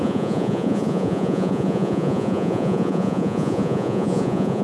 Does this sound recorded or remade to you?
remade